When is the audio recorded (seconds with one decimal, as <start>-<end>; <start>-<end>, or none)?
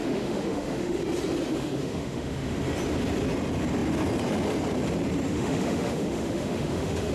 1.0-1.5; 2.6-5.3